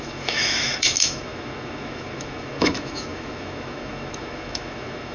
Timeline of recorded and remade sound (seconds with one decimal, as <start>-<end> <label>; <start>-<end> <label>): 0.0-5.1 remade